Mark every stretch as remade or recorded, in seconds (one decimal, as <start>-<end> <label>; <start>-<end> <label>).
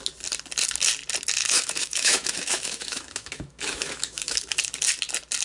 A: 0.0-1.4 recorded; 1.4-4.6 remade; 4.6-5.4 recorded